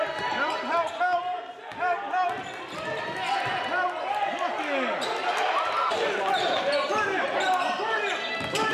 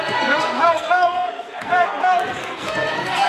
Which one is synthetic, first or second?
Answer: second